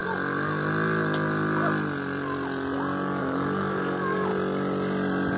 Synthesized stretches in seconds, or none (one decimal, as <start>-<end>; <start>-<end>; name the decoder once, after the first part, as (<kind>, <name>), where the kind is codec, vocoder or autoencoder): 3.2-4.3 (codec, DAC)